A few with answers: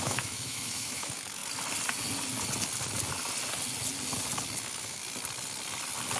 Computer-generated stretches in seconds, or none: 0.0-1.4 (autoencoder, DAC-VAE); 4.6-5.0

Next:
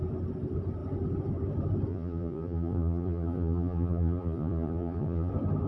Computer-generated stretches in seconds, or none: 1.9-5.3 (vocoder, Vocos)